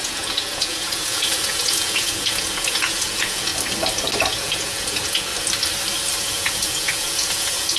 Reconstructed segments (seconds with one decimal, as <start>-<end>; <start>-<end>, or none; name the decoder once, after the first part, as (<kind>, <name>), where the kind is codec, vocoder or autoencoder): 0.0-3.5 (vocoder, Vocos); 4.3-5.3; 6.2-7.8